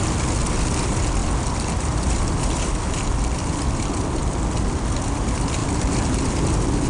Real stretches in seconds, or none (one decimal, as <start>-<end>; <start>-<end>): 0.0-1.2; 4.3-5.6; 6.4-6.9